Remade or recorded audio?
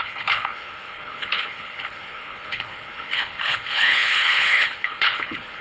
remade